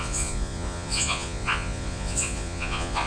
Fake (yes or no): yes